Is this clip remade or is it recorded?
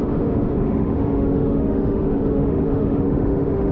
remade